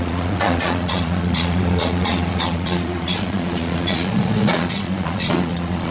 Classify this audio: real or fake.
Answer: fake